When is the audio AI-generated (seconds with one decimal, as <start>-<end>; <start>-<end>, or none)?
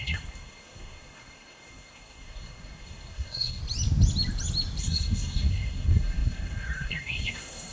0.0-3.6; 4.8-7.7